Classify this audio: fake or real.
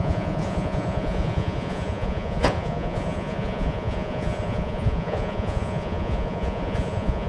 fake